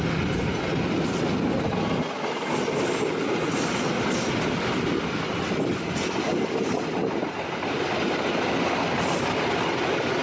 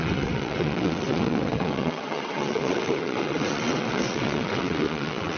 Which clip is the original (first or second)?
first